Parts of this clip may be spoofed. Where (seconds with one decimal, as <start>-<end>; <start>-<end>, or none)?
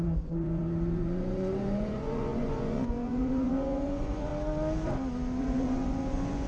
0.0-4.3; 5.4-6.5